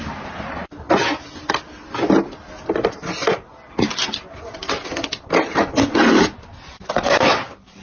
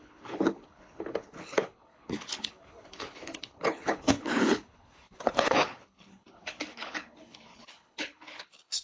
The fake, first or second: second